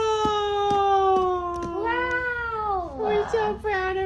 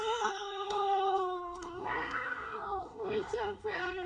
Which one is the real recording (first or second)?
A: first